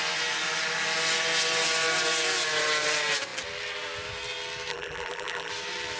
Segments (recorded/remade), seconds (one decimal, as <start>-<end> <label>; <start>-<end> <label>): 0.0-4.7 recorded; 4.7-5.5 remade; 5.5-6.0 recorded